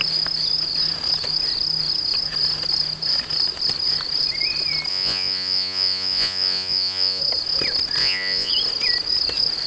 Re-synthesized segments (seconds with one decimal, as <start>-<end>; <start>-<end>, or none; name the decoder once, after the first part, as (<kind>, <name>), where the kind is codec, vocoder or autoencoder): 4.9-7.2 (vocoder, Vocos); 8.0-8.5